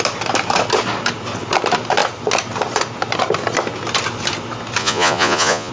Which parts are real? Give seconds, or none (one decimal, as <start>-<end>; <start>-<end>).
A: 0.0-4.8